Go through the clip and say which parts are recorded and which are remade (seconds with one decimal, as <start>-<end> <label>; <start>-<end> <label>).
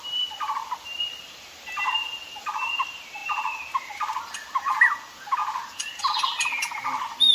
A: 0.0-7.3 recorded